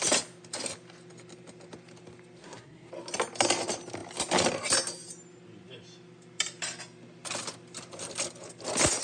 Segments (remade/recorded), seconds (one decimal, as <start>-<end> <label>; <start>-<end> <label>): 0.0-2.4 recorded; 2.4-2.9 remade; 2.9-9.0 recorded